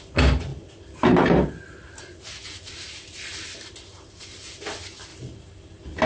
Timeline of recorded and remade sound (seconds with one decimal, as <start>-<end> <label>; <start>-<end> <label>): 0.0-5.1 recorded; 5.1-6.1 remade